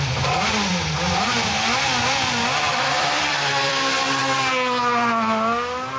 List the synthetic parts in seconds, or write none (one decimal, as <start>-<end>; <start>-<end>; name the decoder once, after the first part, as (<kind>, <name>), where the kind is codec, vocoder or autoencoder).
0.0-0.7 (vocoder, BigVGAN v2); 2.7-4.2